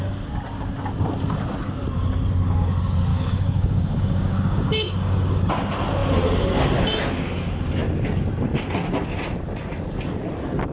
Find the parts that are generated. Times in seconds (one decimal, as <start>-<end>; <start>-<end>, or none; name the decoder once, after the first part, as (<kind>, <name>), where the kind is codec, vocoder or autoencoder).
3.1-5.5 (codec, DAC)